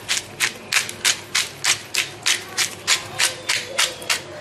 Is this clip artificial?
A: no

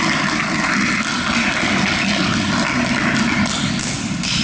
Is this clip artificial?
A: no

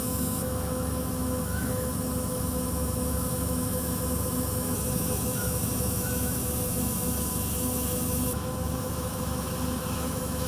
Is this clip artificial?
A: yes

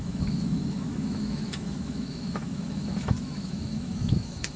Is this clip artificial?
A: yes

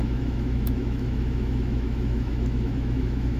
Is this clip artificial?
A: yes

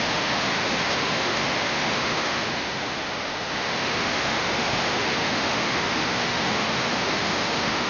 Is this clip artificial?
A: yes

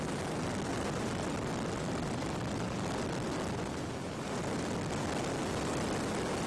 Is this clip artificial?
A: no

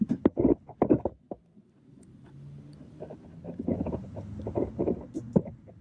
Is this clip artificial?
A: no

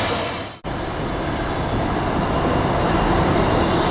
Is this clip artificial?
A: no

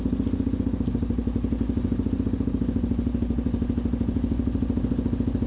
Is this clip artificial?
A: no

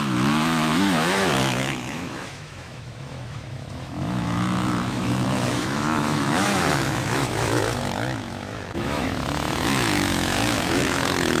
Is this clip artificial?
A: yes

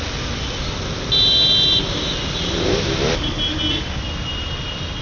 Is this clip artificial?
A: no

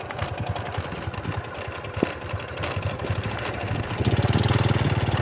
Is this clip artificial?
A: no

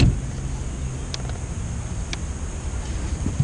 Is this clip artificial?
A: no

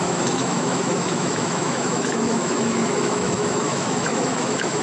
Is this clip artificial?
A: yes